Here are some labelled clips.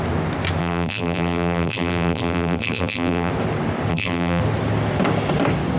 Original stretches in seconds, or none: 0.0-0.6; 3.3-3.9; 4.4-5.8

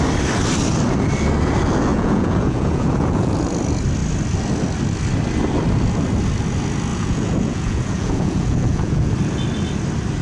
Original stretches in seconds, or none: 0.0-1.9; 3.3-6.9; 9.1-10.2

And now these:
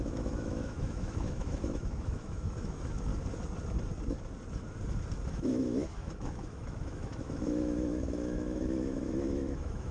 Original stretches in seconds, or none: 3.1-5.3

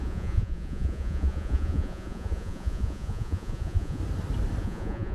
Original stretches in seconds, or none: 4.0-4.6

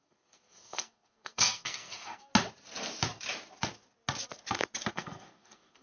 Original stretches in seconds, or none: 2.3-4.9

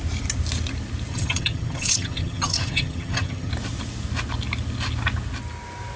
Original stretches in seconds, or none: 0.0-1.1; 3.5-6.0

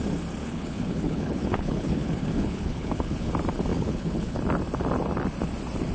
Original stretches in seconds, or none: 0.0-0.4; 3.3-3.7; 4.4-5.9

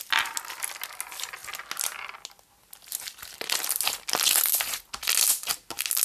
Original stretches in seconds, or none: 0.0-6.0